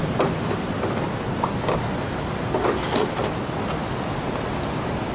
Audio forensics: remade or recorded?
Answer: recorded